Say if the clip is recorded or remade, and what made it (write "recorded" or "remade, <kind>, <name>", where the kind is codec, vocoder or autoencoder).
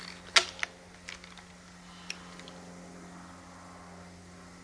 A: recorded